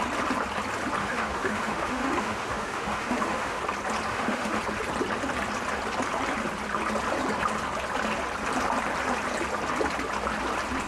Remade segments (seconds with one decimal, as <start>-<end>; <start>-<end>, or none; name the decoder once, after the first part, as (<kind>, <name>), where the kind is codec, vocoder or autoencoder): 1.0-3.6 (autoencoder, DAC-VAE); 4.1-4.6

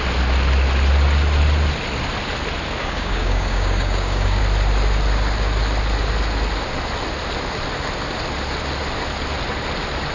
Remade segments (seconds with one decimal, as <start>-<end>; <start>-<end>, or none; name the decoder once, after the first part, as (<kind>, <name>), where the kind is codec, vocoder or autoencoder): 2.8-4.4 (codec, DAC)

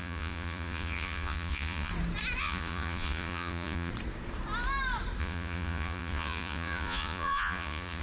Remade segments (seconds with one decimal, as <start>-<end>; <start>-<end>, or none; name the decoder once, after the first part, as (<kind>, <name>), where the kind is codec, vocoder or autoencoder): 0.0-1.9 (vocoder, Vocos); 2.4-3.9; 5.2-8.0

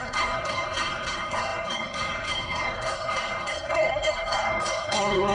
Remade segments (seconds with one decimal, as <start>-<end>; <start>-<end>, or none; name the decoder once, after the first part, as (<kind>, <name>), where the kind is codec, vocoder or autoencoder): 0.0-5.3 (codec, SNAC)